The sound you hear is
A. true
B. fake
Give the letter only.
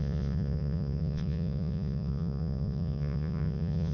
B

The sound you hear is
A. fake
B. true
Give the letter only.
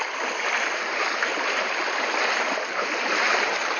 A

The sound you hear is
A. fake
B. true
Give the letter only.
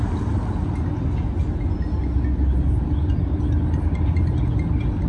B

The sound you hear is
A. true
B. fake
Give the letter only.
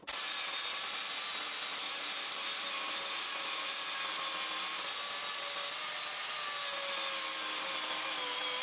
A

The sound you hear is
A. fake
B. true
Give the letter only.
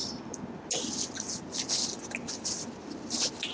B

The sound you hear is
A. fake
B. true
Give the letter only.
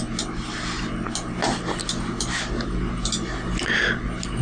B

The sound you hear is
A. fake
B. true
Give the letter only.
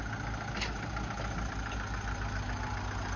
B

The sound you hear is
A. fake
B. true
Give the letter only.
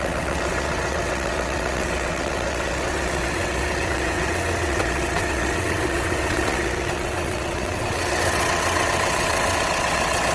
A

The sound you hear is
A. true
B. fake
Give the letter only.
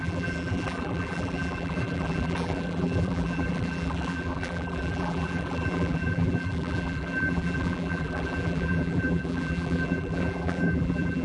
B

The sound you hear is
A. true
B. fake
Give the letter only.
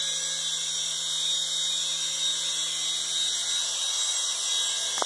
A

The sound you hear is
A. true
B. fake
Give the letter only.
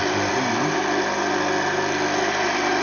A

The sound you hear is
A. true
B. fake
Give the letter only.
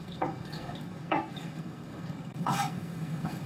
B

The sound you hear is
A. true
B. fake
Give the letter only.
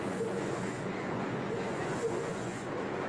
B